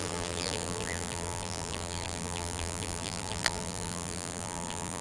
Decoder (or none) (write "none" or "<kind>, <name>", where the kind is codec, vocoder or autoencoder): vocoder, BigVGAN v2